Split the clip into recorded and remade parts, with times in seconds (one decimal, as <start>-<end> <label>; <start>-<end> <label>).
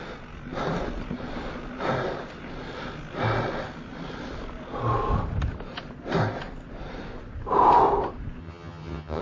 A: 0.0-8.4 recorded; 8.4-9.2 remade